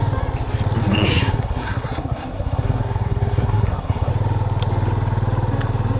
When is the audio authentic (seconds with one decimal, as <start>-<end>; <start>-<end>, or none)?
0.0-1.1; 4.1-6.0